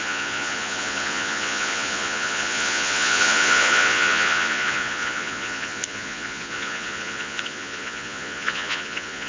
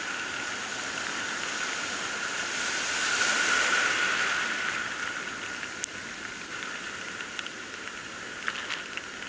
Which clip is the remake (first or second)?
first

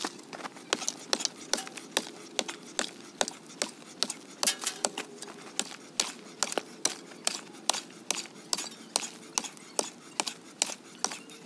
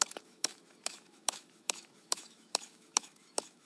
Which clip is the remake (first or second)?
second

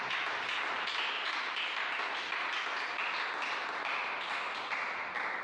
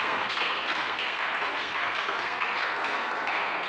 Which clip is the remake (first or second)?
second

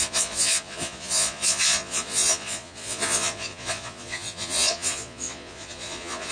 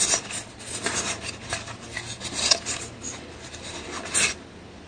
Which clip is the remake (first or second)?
first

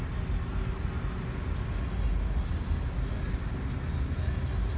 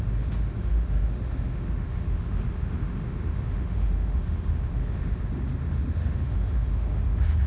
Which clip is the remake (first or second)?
second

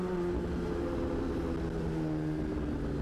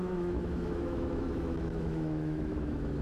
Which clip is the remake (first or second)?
second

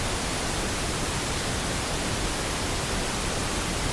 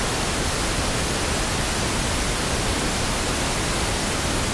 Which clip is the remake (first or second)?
first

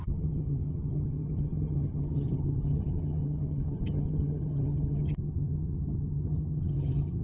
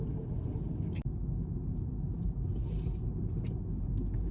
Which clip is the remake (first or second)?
first